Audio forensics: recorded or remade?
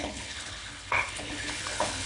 remade